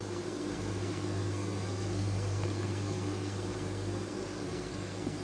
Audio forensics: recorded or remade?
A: remade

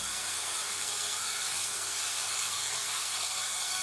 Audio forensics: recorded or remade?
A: remade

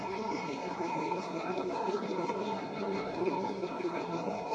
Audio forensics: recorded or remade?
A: remade